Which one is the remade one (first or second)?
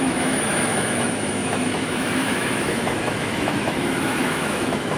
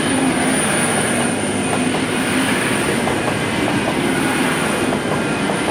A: first